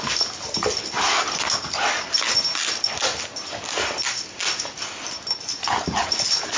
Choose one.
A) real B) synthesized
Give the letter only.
A